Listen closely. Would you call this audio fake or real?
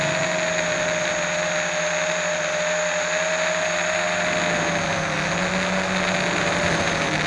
real